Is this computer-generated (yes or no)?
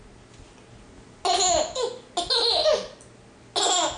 no